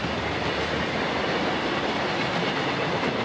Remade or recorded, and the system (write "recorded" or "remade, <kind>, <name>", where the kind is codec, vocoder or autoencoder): recorded